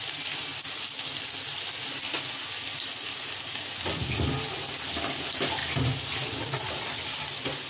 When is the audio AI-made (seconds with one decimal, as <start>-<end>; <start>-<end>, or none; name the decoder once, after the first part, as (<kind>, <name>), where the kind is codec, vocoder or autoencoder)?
none